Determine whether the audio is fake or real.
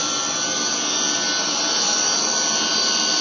real